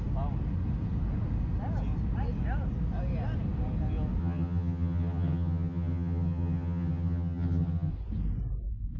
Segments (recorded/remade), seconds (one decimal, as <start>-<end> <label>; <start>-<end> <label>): 0.0-4.2 recorded; 4.2-7.9 remade; 7.9-9.0 recorded